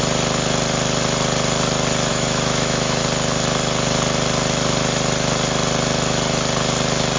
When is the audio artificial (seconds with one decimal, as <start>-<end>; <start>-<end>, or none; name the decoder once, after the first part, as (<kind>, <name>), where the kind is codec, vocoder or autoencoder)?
2.1-3.0 (autoencoder, DAC-VAE)

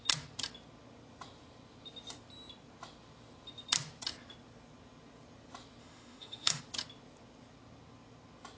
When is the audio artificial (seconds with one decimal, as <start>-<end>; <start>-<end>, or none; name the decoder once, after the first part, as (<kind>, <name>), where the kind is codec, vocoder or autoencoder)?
5.8-6.6 (autoencoder, DAC-VAE)

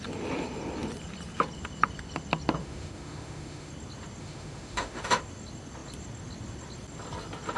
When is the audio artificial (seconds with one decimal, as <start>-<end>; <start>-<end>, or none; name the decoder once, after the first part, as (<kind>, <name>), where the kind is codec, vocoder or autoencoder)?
2.6-3.7 (autoencoder, DAC-VAE); 4.2-5.2

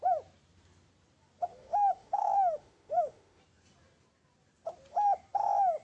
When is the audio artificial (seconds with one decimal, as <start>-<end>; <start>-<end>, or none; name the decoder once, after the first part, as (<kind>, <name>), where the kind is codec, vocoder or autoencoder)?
1.5-3.4 (autoencoder, DAC-VAE)

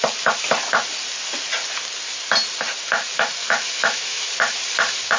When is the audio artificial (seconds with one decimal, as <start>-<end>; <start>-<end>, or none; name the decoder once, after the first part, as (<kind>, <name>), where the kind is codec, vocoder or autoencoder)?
3.4-4.3 (autoencoder, DAC-VAE)

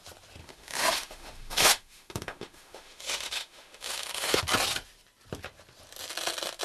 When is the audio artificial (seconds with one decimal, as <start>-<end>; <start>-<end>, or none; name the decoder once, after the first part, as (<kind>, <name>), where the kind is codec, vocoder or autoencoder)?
0.4-4.4 (autoencoder, DAC-VAE)

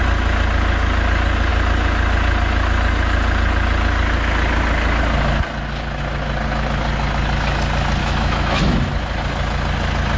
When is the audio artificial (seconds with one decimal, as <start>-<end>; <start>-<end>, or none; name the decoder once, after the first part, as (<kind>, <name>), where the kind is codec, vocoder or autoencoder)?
8.0-8.8 (autoencoder, DAC-VAE)

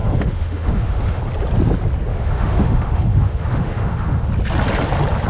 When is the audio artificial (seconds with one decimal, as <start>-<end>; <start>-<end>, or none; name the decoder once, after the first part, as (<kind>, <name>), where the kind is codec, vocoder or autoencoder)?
0.0-1.2 (autoencoder, DAC-VAE); 2.1-4.3